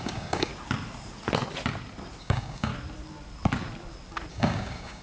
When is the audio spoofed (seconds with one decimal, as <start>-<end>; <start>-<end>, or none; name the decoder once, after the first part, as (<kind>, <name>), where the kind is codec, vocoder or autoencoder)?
0.0-0.5 (codec, DAC); 2.2-2.7; 4.3-5.0